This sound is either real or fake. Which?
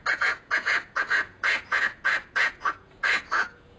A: fake